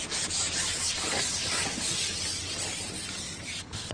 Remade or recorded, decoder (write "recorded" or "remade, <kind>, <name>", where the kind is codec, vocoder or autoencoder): recorded